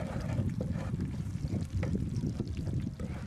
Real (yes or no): no